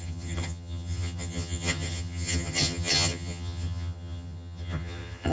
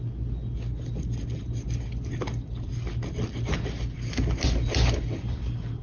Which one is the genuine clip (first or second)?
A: second